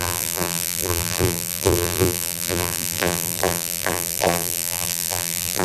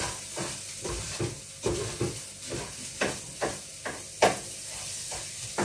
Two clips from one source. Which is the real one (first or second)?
second